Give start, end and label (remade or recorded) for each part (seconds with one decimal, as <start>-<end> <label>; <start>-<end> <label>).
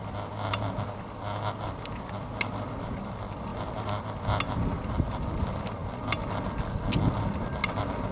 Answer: 0.0-8.1 recorded